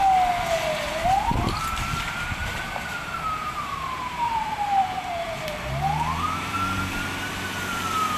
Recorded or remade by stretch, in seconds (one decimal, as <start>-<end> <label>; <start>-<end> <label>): 0.0-2.4 recorded; 2.4-7.3 remade; 7.3-8.2 recorded

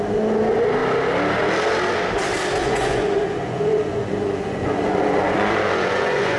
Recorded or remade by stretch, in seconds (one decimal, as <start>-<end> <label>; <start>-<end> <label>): 0.0-2.6 recorded; 2.6-6.4 remade

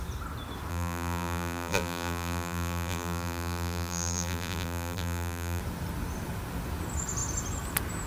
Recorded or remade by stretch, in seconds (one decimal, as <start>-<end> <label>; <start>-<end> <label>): 0.0-0.7 recorded; 0.7-5.6 remade; 5.6-8.1 recorded